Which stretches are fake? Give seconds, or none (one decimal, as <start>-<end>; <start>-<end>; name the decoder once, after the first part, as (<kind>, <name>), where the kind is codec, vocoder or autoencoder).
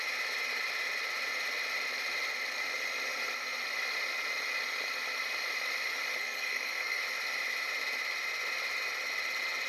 6.2-7.0 (codec, SNAC)